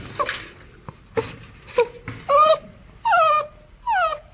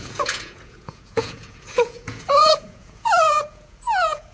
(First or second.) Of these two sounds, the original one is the first